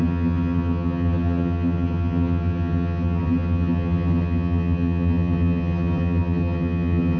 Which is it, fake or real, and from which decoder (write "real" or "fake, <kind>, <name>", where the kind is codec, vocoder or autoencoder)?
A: fake, vocoder, HiFi-GAN